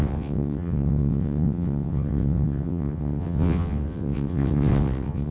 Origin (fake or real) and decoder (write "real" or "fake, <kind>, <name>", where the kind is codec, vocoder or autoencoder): fake, vocoder, WaveNeXt